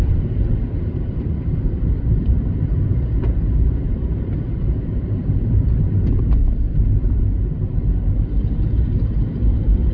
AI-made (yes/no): yes